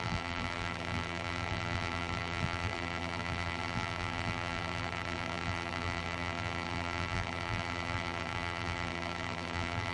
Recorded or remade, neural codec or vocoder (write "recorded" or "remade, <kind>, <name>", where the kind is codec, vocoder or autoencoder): remade, vocoder, BigVGAN v2